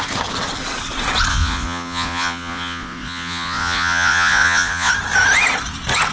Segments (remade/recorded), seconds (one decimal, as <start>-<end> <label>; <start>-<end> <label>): 0.0-1.3 recorded; 1.3-4.9 remade; 4.9-6.1 recorded